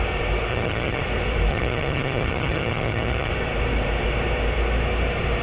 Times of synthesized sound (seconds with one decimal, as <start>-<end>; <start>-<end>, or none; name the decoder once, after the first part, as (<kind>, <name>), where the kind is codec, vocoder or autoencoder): 0.5-1.0 (vocoder, HiFi-GAN); 1.5-3.3